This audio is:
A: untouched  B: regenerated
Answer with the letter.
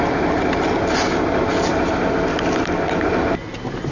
A